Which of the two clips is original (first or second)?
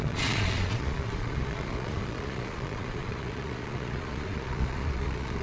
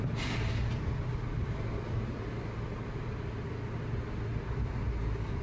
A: second